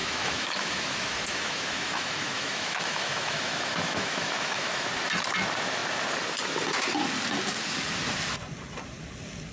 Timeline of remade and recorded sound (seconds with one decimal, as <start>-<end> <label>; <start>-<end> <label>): 0.0-4.9 remade; 4.9-9.5 recorded